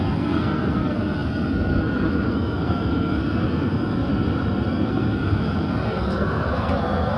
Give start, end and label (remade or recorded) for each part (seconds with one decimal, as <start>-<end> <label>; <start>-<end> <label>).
0.0-4.1 remade; 4.1-4.7 recorded; 4.7-7.2 remade